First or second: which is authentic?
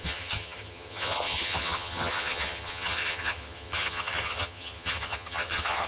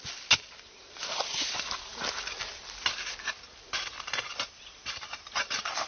second